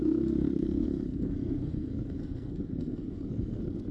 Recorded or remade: remade